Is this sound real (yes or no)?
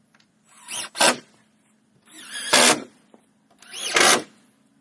yes